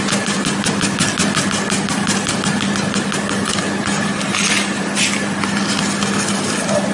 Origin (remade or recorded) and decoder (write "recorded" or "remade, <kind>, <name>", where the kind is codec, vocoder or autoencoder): recorded